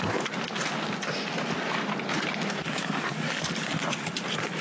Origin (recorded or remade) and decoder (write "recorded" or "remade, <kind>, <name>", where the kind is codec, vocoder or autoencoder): recorded